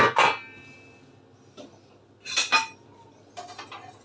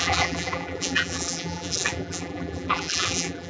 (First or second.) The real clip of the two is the first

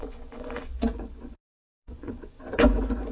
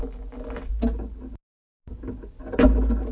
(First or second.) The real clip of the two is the second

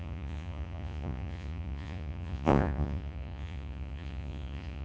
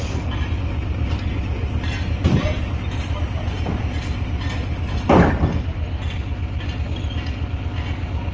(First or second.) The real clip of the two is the second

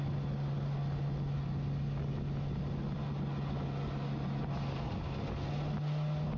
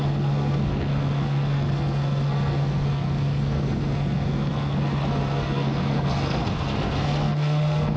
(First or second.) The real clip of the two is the first